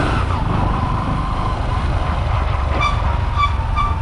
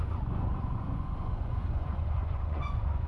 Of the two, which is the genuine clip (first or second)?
first